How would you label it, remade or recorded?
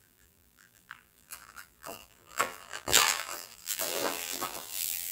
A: remade